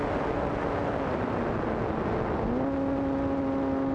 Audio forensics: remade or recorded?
recorded